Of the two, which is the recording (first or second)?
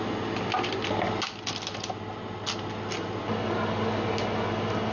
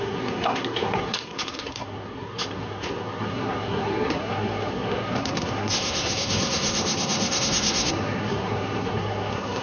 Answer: first